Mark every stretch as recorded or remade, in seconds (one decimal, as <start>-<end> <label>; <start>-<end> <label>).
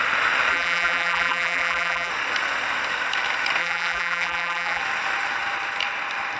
0.0-0.5 recorded; 0.5-2.1 remade; 2.1-3.6 recorded; 3.6-4.8 remade; 4.8-6.4 recorded